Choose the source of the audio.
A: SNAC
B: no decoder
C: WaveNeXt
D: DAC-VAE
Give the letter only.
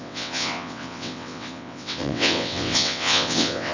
C